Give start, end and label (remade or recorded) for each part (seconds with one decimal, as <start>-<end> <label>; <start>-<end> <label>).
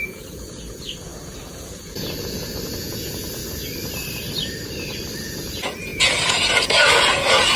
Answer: 0.0-3.4 remade; 3.4-5.2 recorded; 5.2-7.6 remade